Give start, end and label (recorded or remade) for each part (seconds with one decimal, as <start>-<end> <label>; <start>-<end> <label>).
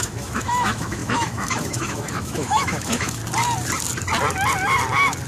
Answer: 0.0-3.2 remade; 3.2-5.3 recorded